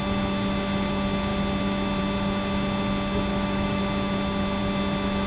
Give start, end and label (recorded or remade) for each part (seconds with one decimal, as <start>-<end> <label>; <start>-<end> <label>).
0.0-3.3 recorded; 3.3-3.8 remade; 3.8-5.3 recorded

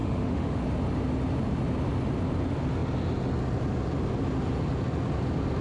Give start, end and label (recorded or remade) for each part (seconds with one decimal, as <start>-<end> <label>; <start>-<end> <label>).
0.0-0.6 remade; 0.6-5.6 recorded

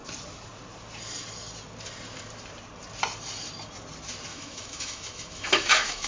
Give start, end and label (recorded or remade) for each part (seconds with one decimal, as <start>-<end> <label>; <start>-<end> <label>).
0.0-4.3 recorded; 4.3-6.1 remade